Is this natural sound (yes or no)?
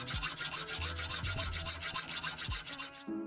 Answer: yes